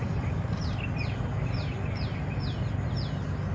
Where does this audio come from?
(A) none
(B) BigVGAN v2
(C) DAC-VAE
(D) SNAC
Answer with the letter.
A